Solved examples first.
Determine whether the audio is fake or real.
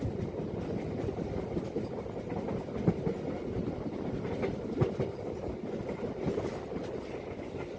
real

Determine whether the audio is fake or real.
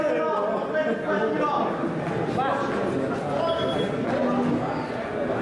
real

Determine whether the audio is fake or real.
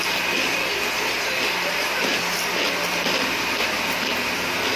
real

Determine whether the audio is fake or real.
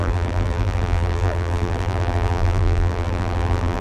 fake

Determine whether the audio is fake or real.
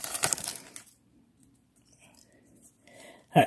fake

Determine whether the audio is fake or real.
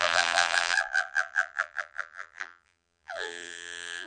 fake